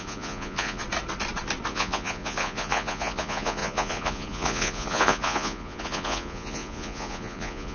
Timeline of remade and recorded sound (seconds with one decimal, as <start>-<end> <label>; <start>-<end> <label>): 0.0-0.8 remade; 0.8-1.7 recorded; 1.7-7.7 remade